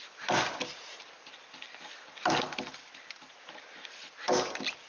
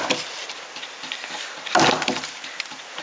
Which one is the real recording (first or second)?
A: first